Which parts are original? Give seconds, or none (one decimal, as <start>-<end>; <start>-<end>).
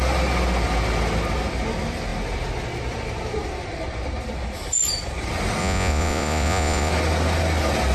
0.0-5.6; 6.9-7.9